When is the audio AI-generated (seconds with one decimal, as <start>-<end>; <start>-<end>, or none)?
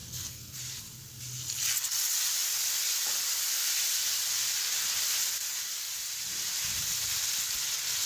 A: 0.0-0.6